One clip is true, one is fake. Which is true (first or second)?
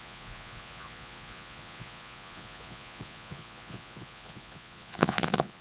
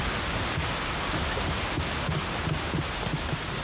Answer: second